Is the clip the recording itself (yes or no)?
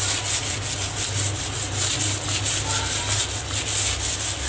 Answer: yes